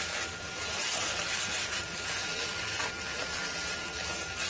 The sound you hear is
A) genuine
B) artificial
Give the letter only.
A